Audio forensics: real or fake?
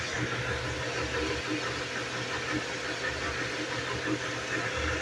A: real